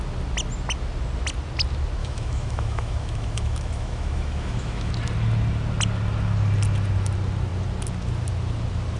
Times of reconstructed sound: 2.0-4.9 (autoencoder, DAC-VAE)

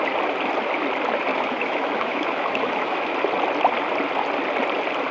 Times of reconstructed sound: 1.3-3.1 (autoencoder, DAC-VAE)